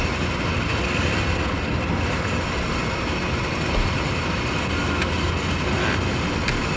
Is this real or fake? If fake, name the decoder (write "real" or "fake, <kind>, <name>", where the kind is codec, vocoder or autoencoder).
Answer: real